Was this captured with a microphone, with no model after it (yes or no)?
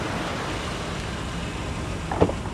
yes